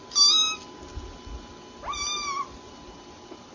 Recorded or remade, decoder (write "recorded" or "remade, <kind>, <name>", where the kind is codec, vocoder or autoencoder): recorded